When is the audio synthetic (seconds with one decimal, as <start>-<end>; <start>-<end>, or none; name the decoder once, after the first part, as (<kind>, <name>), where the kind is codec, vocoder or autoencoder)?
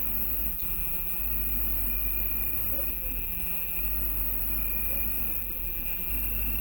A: 0.5-1.2 (vocoder, BigVGAN v2); 2.9-3.8; 5.4-6.1